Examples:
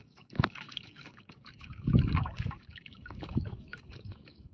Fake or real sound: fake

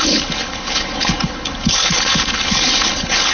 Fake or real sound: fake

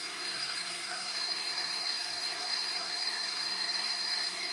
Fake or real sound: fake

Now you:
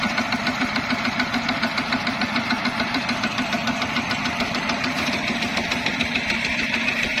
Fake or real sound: fake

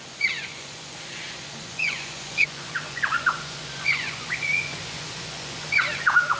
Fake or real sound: fake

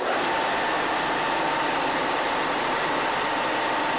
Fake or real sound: real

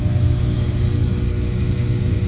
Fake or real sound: fake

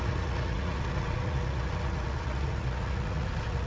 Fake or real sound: fake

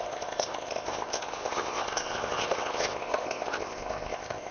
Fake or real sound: fake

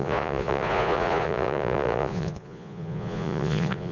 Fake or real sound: fake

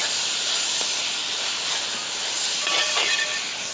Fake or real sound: real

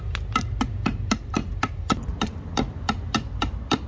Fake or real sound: real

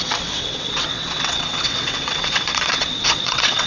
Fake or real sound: fake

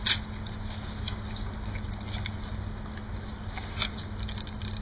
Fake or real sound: real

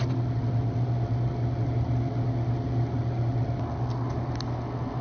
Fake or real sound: real